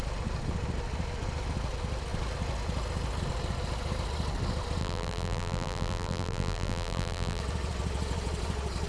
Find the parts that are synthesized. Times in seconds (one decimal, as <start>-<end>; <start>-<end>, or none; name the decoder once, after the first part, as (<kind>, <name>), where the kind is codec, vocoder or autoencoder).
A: 4.8-7.4 (vocoder, BigVGAN v2)